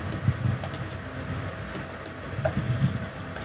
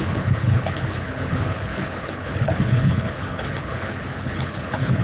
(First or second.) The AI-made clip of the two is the second